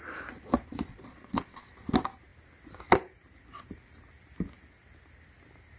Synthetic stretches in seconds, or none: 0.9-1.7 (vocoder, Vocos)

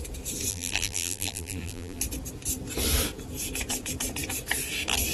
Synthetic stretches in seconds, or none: 0.5-2.0 (vocoder, BigVGAN v2)

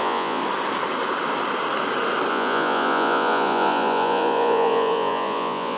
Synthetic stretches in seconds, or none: 0.0-0.4 (vocoder, Vocos); 2.3-5.8

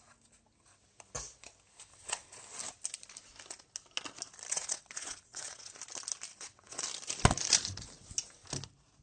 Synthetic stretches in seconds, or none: 1.9-2.4 (vocoder, WaveNeXt); 4.5-5.7; 6.3-6.8